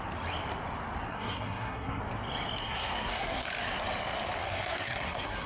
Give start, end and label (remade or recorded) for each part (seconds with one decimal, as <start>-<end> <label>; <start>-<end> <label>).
0.0-1.1 recorded; 1.1-2.0 remade; 2.0-2.6 recorded; 2.6-3.5 remade; 3.5-4.4 recorded; 4.4-5.5 remade